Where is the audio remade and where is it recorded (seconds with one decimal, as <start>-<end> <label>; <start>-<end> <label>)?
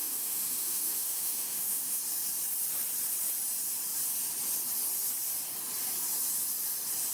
0.0-2.0 remade; 2.0-7.1 recorded